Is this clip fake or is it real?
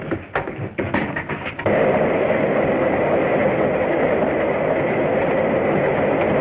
real